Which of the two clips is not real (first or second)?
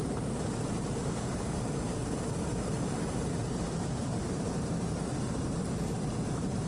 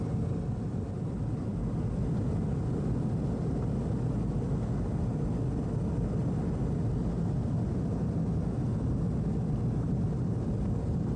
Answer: first